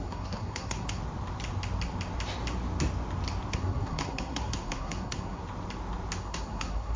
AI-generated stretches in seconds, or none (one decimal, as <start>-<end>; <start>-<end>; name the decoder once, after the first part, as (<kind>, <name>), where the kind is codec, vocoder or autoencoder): 0.0-1.0 (codec, SNAC); 3.5-5.4; 6.2-7.0